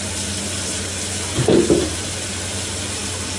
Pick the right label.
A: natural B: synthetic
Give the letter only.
A